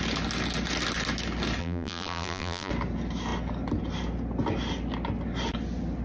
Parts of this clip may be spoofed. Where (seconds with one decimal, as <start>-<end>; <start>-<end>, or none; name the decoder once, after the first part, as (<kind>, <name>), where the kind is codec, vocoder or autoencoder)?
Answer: 1.6-2.7 (vocoder, BigVGAN v2)